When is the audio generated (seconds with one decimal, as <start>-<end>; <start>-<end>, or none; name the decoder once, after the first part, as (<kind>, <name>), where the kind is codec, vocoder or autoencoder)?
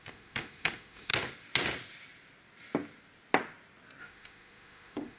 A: 0.0-1.1 (autoencoder, DAC-VAE); 4.0-5.2